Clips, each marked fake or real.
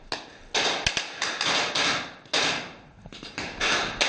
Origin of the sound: real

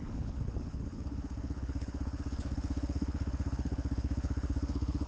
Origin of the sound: fake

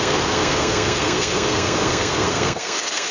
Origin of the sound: fake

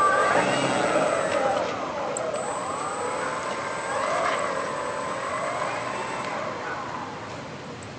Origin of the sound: real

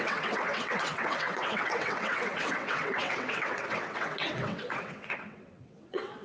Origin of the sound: fake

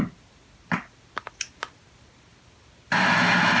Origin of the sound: real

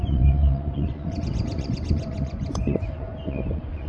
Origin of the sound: fake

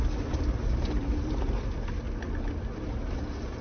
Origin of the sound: real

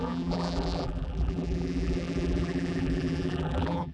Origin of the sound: fake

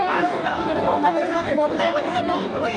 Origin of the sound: fake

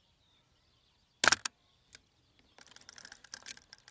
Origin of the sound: real